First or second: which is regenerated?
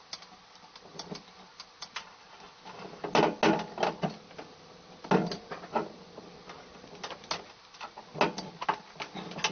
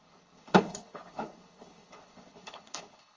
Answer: second